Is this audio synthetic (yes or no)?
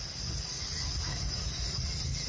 no